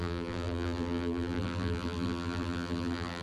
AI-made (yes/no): yes